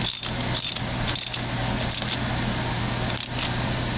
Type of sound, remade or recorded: recorded